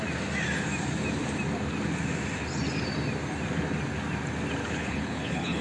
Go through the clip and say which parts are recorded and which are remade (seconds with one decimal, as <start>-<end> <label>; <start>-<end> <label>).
0.0-4.6 recorded; 4.6-5.6 remade